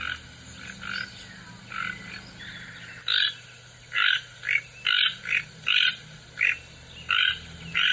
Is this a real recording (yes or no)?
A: yes